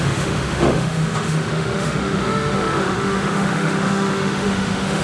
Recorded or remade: remade